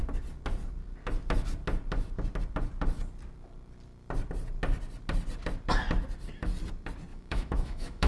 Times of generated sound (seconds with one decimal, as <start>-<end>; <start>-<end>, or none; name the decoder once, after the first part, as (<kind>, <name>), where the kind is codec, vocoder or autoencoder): 7.1-8.1 (autoencoder, DAC-VAE)